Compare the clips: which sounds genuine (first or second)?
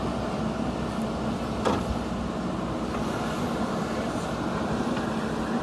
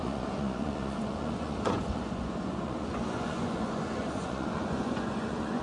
first